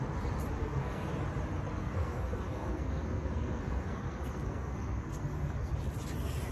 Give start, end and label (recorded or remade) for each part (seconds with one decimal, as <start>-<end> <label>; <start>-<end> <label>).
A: 0.0-0.6 recorded; 0.6-1.1 remade; 1.1-1.8 recorded; 1.8-5.7 remade; 5.7-6.5 recorded